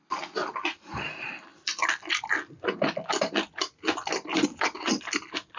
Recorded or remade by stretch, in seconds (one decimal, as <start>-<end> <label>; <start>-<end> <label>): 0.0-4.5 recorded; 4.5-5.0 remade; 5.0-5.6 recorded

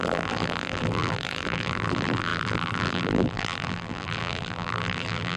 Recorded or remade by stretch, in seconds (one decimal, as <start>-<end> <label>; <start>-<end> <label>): 0.0-5.4 remade

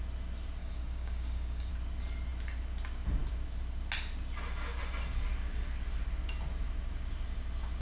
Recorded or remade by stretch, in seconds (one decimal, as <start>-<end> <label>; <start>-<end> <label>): 0.0-0.6 recorded; 0.6-1.7 remade; 1.7-7.8 recorded

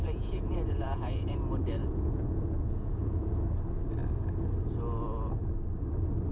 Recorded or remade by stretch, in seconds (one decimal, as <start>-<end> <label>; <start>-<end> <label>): 0.0-1.4 remade; 1.4-1.8 recorded; 1.8-3.3 remade; 3.3-6.3 recorded

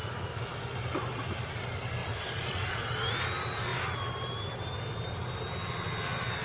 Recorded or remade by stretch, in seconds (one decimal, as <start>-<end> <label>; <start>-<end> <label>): 0.0-2.0 recorded; 2.0-3.1 remade; 3.1-3.7 recorded; 3.7-5.4 remade; 5.4-6.4 recorded